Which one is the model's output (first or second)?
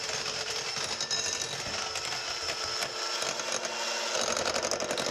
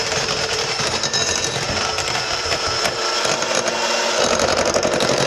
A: second